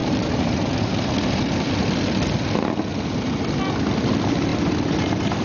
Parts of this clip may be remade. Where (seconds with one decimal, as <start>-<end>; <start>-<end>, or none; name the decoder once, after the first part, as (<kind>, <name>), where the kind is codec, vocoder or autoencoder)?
0.0-1.7 (vocoder, BigVGAN v2); 4.5-5.4